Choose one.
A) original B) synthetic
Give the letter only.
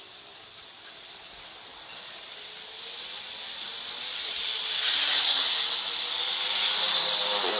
A